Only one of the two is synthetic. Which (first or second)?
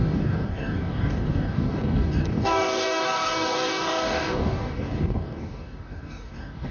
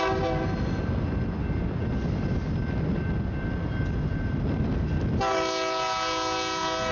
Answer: first